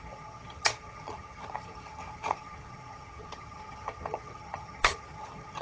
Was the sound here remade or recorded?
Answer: remade